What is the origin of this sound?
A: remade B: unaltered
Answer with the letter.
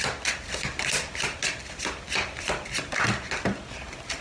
B